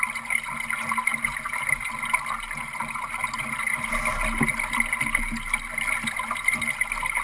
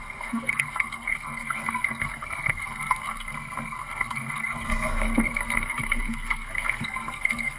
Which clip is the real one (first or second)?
first